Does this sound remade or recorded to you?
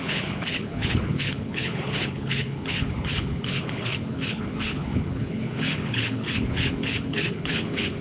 remade